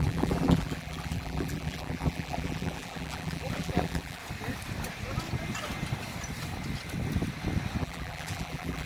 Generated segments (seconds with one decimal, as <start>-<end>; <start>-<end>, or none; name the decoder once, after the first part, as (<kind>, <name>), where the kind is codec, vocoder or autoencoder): 0.0-4.2 (vocoder, BigVGAN v2); 7.8-8.9